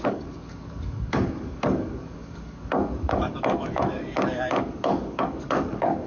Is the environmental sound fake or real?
fake